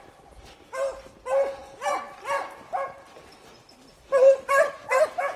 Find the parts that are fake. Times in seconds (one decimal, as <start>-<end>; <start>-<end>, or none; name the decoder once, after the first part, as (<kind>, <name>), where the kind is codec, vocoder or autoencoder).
none